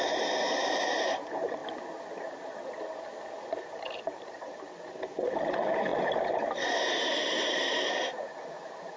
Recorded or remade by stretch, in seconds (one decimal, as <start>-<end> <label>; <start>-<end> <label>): 0.0-1.6 remade; 1.6-4.0 recorded; 4.0-9.0 remade